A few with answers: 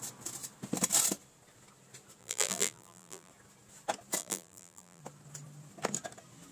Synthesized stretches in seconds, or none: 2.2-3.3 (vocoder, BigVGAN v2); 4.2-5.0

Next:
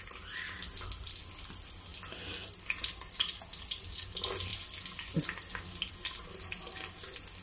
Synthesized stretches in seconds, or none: none

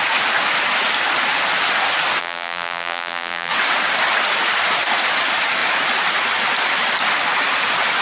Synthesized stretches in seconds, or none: 2.2-3.5 (vocoder, BigVGAN v2)